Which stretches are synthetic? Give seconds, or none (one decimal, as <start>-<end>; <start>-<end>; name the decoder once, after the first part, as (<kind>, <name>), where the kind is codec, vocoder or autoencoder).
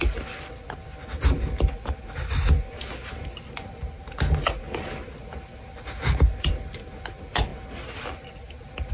none